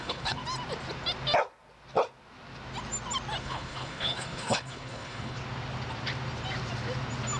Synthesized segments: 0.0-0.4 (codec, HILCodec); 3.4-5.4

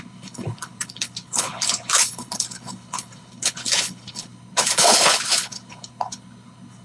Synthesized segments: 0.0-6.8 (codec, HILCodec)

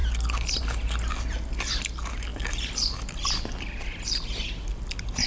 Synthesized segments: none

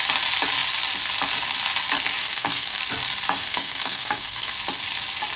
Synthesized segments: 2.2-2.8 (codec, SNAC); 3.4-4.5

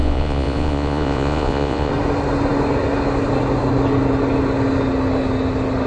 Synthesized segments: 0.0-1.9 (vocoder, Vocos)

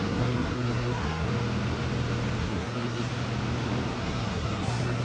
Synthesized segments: 0.0-1.3 (codec, SNAC); 2.4-3.1; 3.9-5.0

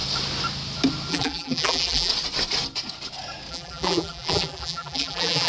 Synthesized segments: 1.1-2.1 (vocoder, BigVGAN v2); 3.5-5.5